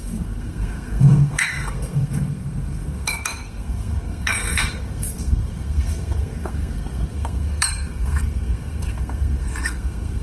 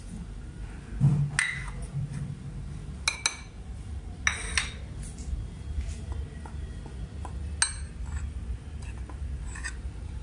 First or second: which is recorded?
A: second